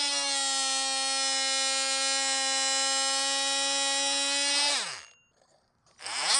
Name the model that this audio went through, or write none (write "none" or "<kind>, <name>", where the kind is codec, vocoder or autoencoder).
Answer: none